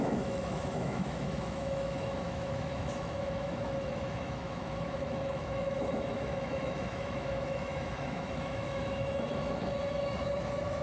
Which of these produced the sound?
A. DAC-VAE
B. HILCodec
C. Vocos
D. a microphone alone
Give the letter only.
A